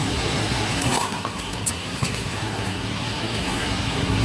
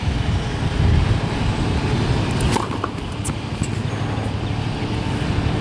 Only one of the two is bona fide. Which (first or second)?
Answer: second